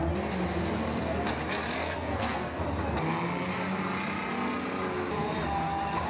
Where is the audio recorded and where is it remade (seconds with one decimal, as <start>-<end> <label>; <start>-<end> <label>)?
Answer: 0.0-1.8 recorded; 1.8-2.6 remade; 2.6-6.1 recorded